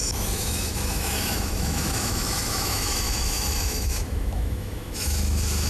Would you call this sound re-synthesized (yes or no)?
yes